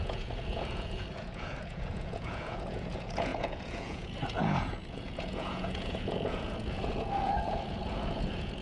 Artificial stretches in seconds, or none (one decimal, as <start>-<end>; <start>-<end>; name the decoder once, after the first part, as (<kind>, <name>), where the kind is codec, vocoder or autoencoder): 0.0-8.6 (vocoder, Vocos)